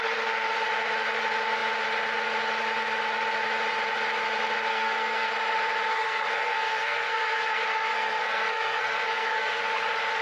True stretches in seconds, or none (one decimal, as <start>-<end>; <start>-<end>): 0.0-4.7; 5.3-5.9; 9.6-10.2